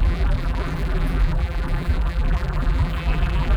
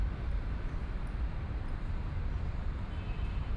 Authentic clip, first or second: second